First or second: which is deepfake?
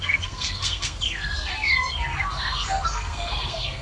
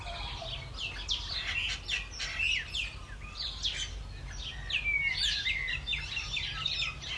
first